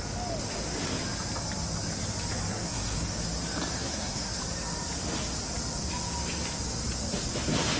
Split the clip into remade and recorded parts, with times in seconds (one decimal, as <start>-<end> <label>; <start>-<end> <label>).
0.0-2.5 recorded; 2.5-3.1 remade; 3.1-3.7 recorded; 3.7-4.4 remade; 4.4-7.8 recorded